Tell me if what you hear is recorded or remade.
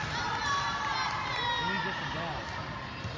recorded